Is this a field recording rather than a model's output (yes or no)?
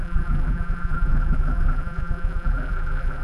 no